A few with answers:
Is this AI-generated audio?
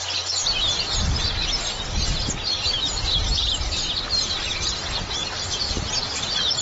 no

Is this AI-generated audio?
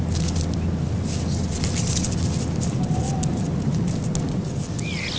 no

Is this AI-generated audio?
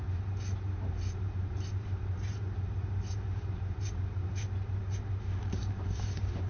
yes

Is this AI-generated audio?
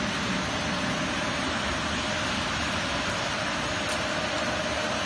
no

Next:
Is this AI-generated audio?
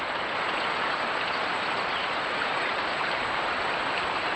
yes